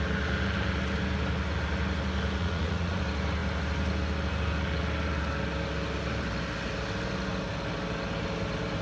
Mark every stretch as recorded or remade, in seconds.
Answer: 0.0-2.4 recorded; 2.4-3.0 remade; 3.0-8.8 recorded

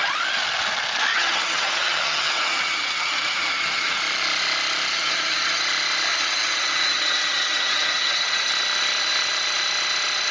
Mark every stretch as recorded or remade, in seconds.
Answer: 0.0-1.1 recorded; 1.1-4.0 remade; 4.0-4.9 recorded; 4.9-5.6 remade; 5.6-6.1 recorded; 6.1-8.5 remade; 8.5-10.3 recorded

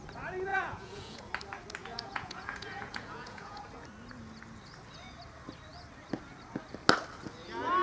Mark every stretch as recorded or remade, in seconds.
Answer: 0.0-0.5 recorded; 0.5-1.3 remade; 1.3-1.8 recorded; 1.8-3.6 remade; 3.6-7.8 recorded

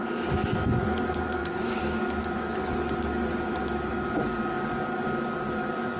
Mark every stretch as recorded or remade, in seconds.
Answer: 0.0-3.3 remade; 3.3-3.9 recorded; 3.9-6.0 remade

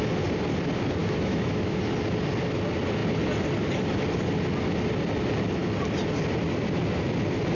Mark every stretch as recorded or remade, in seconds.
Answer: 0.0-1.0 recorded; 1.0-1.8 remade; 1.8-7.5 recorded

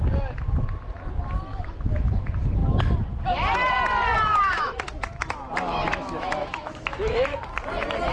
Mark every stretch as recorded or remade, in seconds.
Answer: 0.0-1.5 recorded; 1.5-2.2 remade; 2.2-4.3 recorded; 4.3-7.4 remade; 7.4-8.1 recorded

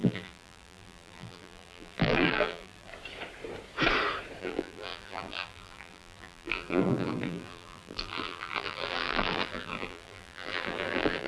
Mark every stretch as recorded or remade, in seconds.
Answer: 0.0-2.9 remade; 2.9-4.4 recorded; 4.4-11.3 remade